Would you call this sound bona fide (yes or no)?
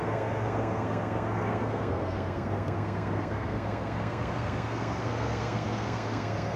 no